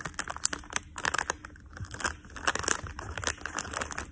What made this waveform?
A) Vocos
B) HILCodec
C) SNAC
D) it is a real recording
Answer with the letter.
D